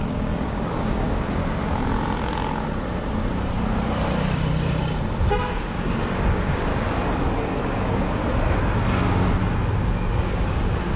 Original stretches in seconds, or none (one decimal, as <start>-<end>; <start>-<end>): 1.4-5.4; 6.7-7.6; 8.2-9.0; 9.4-10.2